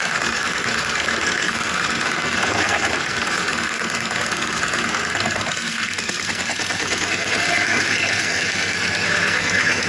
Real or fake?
fake